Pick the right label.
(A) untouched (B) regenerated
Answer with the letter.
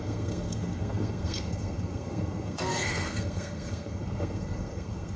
B